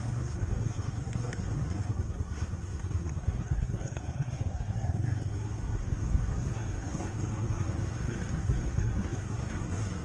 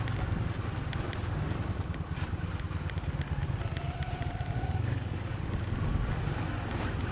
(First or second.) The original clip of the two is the second